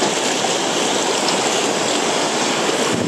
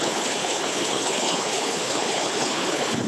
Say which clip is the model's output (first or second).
second